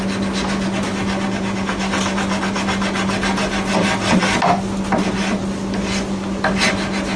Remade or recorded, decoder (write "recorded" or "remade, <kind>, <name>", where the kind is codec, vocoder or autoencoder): recorded